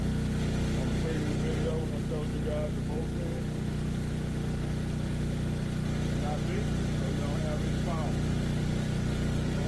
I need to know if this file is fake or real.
real